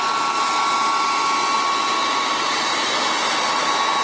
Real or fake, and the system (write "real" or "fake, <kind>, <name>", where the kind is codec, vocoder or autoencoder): real